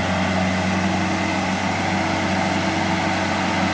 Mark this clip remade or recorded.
recorded